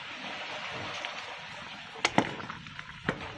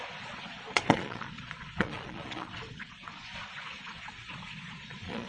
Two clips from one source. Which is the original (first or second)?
first